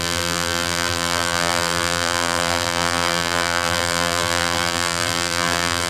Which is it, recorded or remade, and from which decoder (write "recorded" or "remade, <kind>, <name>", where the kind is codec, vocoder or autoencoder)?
remade, vocoder, BigVGAN v2